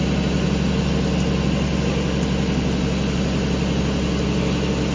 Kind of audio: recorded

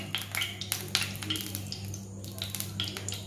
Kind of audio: recorded